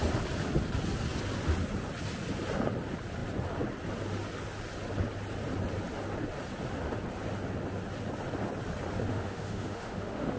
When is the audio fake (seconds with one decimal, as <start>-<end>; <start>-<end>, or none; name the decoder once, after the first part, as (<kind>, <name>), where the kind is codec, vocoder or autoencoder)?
9.1-10.4 (autoencoder, DAC-VAE)